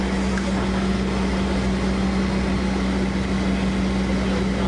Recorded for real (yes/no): yes